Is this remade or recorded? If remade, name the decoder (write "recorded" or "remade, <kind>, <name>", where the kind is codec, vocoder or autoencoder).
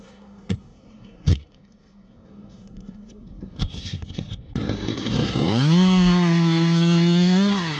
remade, codec, SNAC